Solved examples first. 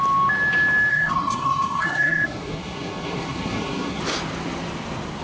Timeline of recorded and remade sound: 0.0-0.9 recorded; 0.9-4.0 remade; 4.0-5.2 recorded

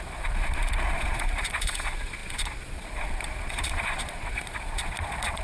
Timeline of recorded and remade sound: 0.0-5.4 remade